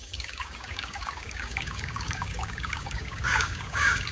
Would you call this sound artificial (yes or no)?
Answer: yes